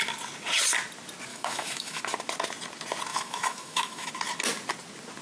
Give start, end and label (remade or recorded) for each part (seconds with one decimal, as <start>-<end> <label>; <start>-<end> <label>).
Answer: 0.0-1.3 recorded; 1.3-2.0 remade; 2.0-3.1 recorded; 3.1-4.1 remade; 4.1-5.2 recorded